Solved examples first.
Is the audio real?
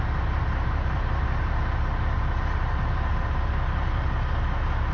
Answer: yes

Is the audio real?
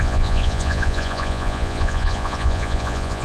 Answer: no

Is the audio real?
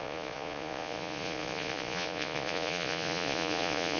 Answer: no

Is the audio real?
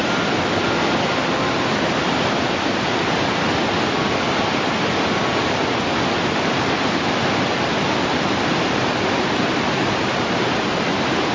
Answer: yes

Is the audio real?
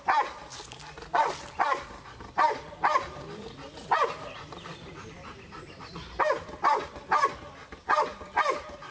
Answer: yes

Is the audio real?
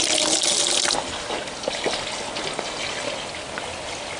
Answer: yes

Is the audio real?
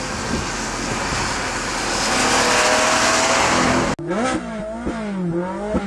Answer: yes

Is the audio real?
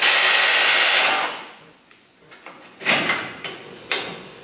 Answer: no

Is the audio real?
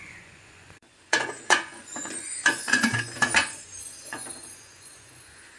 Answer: no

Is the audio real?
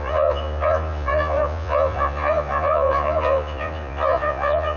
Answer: no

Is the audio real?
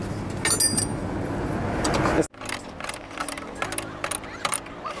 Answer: yes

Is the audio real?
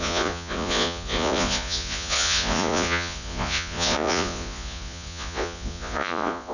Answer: no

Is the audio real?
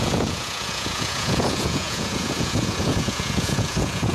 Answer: no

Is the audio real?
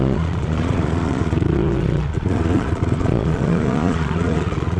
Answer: no